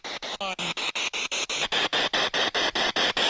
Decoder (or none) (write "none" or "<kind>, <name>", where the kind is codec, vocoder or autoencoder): none